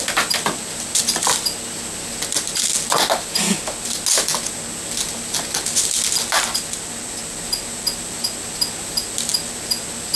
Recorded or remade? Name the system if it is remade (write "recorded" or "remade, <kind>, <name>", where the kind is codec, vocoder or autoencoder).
recorded